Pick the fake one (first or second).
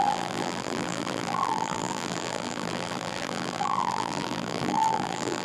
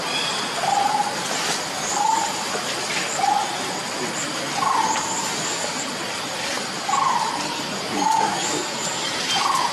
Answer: first